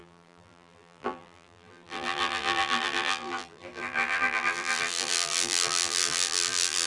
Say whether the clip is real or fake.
fake